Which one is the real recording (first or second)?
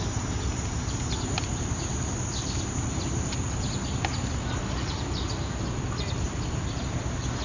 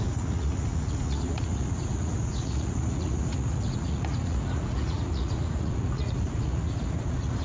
first